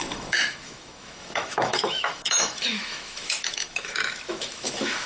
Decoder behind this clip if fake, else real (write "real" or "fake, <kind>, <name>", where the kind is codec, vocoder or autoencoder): fake, autoencoder, DAC-VAE